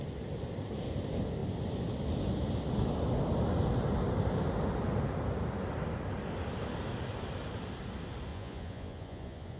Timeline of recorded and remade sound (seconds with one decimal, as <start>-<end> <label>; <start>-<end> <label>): 0.0-8.3 recorded; 8.3-9.6 remade